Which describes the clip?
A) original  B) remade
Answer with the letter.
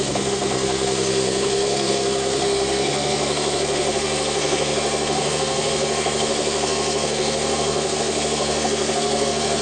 B